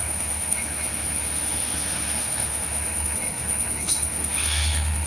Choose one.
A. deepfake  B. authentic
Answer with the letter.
A